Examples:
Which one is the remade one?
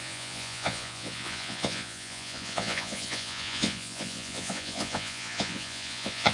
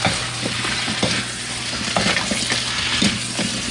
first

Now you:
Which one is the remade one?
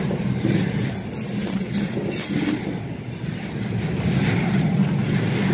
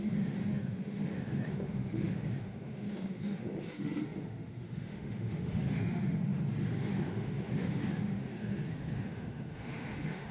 second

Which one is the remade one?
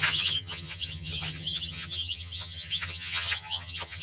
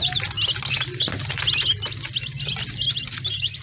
first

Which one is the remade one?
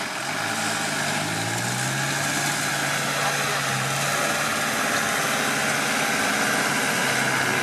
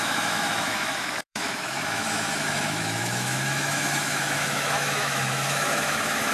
second